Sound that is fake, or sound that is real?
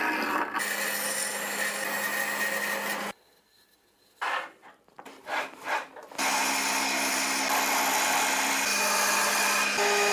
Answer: real